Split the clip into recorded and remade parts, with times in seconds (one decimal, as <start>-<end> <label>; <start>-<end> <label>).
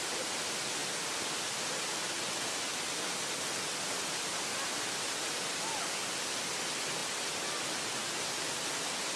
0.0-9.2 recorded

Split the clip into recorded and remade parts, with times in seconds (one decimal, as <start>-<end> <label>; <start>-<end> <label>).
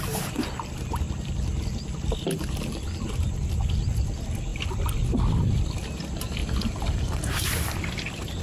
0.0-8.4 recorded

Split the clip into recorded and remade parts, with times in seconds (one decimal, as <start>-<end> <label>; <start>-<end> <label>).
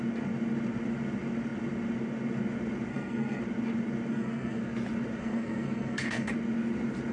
0.0-2.9 recorded; 2.9-3.4 remade; 3.4-4.1 recorded; 4.1-4.6 remade; 4.6-5.2 recorded; 5.2-6.3 remade; 6.3-7.1 recorded